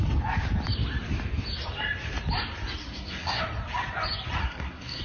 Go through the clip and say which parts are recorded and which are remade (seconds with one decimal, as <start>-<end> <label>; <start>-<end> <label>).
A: 0.0-2.8 recorded; 2.8-3.4 remade; 3.4-4.4 recorded; 4.4-5.0 remade